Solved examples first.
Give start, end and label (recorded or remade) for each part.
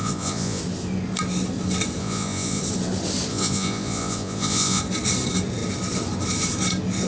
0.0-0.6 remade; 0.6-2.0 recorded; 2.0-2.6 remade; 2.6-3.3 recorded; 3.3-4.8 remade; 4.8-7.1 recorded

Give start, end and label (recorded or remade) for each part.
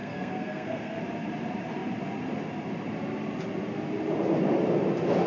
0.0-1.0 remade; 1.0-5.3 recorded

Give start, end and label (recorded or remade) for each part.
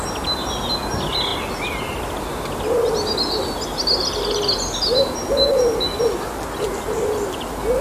0.0-7.8 recorded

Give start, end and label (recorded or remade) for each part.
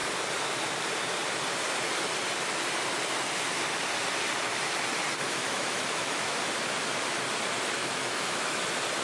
0.0-5.4 recorded; 5.4-6.4 remade; 6.4-7.8 recorded; 7.8-8.6 remade; 8.6-9.0 recorded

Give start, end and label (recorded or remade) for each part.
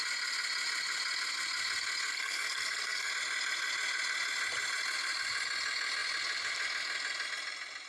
0.0-2.1 recorded; 2.1-3.1 remade; 3.1-7.9 recorded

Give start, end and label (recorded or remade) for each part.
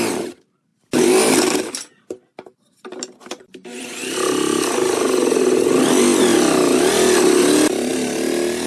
0.0-8.7 recorded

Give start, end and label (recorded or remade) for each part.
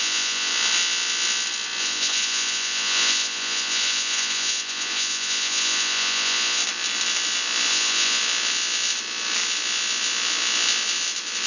0.0-0.5 remade; 0.5-1.8 recorded; 1.8-6.6 remade; 6.6-7.7 recorded; 7.7-8.2 remade; 8.2-11.5 recorded